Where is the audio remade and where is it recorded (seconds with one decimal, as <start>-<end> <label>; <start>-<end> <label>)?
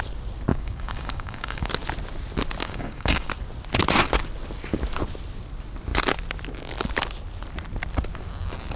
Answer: 0.0-0.5 recorded; 0.5-1.7 remade; 1.7-2.6 recorded; 2.6-3.3 remade; 3.3-8.8 recorded